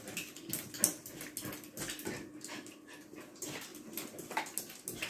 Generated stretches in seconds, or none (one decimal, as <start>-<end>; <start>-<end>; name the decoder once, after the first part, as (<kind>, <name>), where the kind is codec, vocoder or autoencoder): none